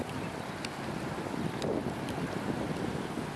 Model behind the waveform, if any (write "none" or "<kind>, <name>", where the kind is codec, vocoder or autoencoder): none